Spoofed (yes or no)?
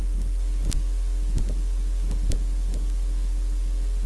no